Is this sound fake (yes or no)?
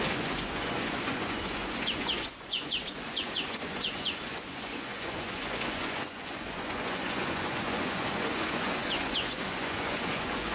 yes